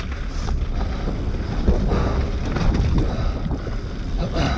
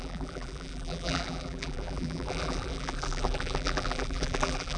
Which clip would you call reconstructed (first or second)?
second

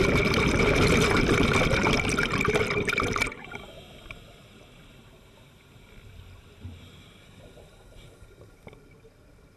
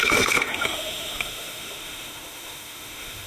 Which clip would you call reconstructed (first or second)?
second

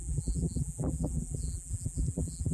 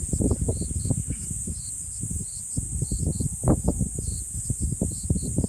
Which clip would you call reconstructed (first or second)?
first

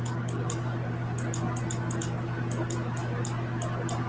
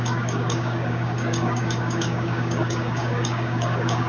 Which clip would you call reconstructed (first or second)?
second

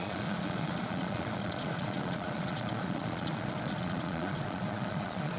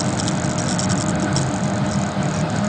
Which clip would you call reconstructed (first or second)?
first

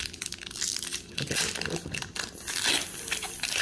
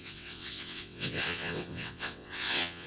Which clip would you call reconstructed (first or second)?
second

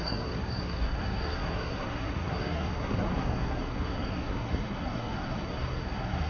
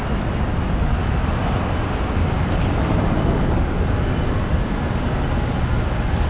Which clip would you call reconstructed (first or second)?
first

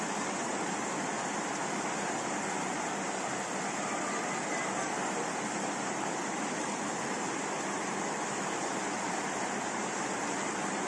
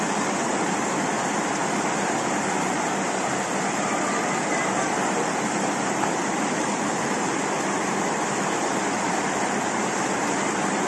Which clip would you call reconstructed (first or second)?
second